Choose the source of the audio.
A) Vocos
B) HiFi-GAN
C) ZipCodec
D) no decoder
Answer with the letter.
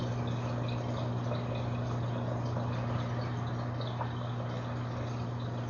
D